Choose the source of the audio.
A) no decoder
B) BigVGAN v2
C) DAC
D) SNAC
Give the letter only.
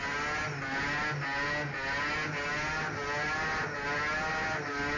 A